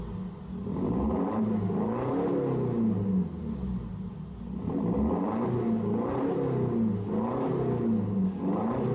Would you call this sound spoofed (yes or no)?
no